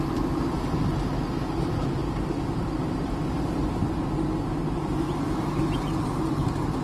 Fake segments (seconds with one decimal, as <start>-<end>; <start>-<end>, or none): none